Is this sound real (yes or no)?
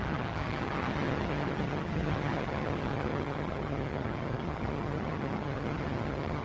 no